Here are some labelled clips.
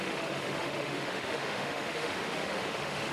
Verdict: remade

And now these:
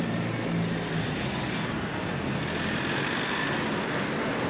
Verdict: recorded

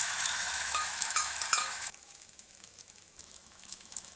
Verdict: remade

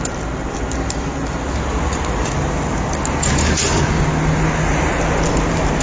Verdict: recorded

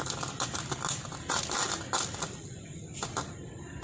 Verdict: recorded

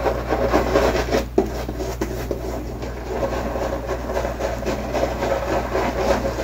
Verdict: recorded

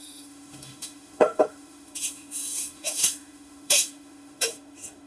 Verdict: remade